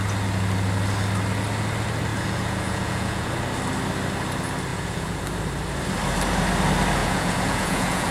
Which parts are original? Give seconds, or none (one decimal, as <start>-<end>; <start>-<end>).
0.0-2.1; 3.3-4.7; 5.2-7.0